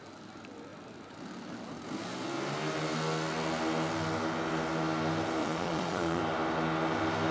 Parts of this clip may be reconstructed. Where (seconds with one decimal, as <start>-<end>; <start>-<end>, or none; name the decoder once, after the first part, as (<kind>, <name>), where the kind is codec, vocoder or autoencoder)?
5.4-6.2 (vocoder, Vocos)